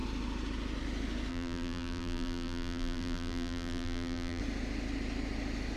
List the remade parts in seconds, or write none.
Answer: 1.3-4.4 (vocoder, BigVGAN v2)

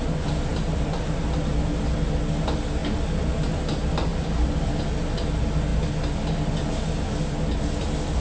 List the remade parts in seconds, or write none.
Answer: 0.5-1.1 (vocoder, BigVGAN v2); 2.8-3.3; 4.1-4.8

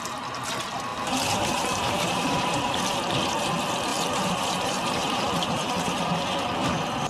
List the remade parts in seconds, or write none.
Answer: 0.9-2.6 (vocoder, BigVGAN v2); 3.9-5.7